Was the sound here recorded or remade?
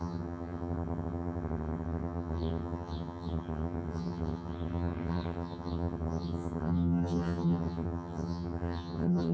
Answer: remade